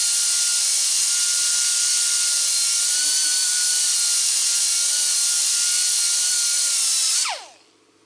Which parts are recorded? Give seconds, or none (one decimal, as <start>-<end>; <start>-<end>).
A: 0.0-3.3; 3.9-8.1